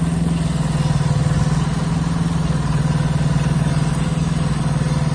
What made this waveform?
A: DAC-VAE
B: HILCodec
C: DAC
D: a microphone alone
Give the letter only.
D